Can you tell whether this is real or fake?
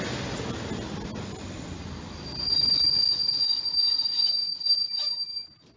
real